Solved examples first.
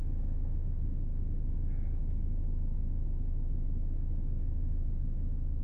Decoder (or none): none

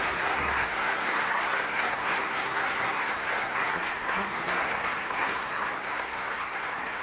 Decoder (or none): codec, SNAC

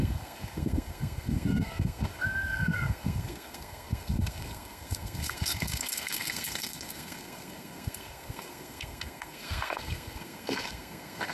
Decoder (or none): codec, SNAC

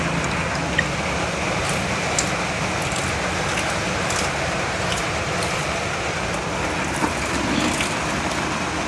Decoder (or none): none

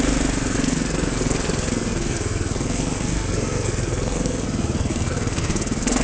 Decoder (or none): codec, SNAC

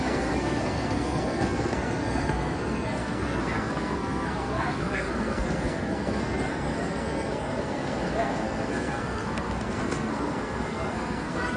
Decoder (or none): codec, SNAC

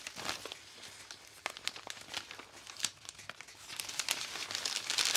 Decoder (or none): none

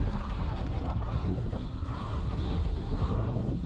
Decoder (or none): codec, SNAC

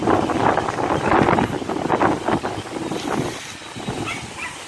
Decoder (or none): none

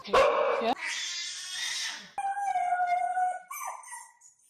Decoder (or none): none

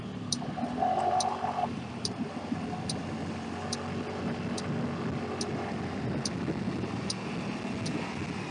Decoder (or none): none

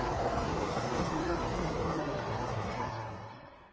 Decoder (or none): codec, SNAC